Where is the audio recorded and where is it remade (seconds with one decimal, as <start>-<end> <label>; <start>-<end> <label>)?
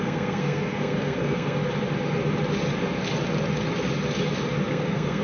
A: 0.0-1.6 remade; 1.6-4.7 recorded; 4.7-5.2 remade